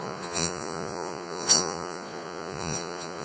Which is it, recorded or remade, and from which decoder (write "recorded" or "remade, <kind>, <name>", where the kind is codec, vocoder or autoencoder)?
remade, vocoder, Vocos